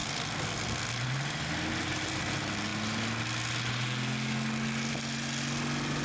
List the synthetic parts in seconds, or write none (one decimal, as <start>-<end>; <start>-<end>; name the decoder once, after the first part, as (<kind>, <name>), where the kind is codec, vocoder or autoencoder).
none